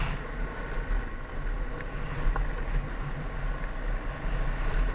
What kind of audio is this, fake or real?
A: real